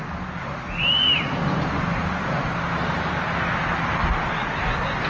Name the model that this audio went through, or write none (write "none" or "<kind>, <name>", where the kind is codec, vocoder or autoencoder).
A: none